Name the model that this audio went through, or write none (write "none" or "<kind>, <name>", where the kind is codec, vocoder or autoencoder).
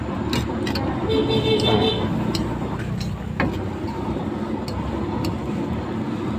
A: none